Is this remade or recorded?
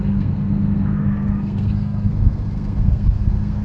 remade